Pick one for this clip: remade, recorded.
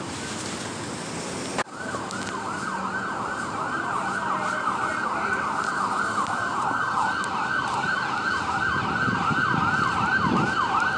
recorded